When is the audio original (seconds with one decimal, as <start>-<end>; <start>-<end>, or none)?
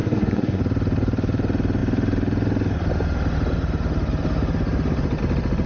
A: 0.6-5.7